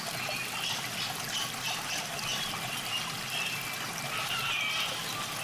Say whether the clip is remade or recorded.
recorded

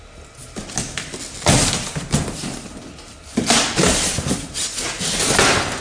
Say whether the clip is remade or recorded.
recorded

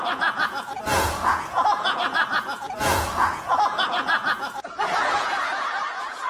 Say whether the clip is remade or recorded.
remade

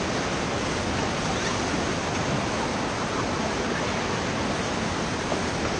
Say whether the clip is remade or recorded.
recorded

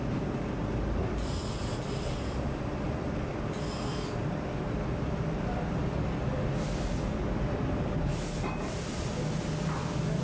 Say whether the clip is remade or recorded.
recorded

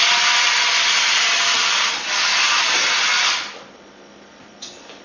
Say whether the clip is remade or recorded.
recorded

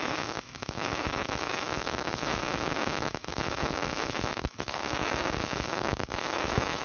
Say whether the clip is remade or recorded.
remade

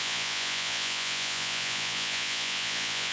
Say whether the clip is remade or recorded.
remade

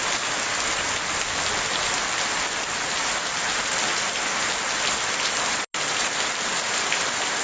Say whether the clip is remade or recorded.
recorded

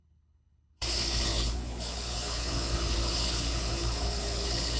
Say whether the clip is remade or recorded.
remade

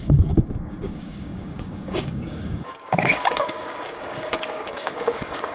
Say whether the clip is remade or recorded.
remade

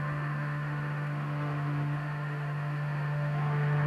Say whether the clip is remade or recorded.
remade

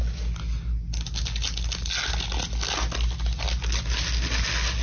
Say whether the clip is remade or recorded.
recorded